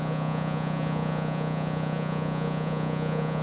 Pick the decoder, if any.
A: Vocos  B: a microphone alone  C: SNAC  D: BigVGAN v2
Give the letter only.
A